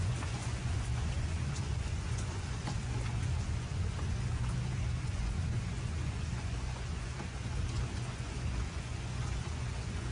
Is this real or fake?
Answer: fake